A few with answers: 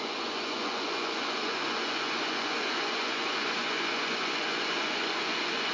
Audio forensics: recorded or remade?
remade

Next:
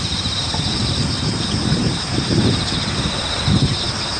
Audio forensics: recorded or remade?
remade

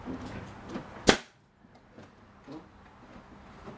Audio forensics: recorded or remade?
recorded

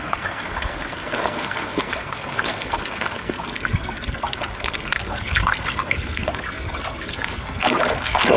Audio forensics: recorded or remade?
remade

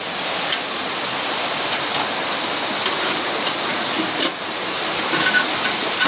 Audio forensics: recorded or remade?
recorded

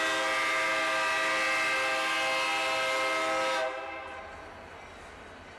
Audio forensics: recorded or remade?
recorded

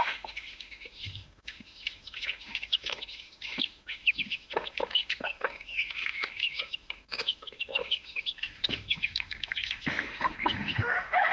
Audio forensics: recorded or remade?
remade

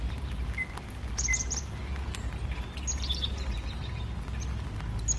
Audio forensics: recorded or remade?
recorded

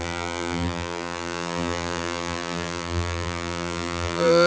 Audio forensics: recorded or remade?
remade